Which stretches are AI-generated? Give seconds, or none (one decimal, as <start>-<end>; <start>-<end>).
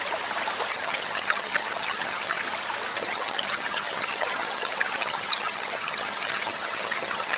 0.7-2.4; 2.9-7.4